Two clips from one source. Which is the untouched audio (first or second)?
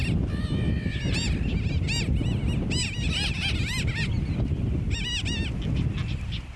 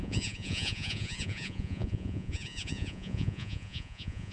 first